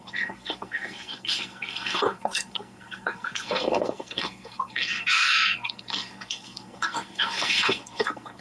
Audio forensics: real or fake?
fake